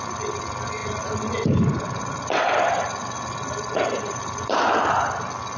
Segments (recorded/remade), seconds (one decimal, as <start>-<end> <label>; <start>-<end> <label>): 0.0-5.6 recorded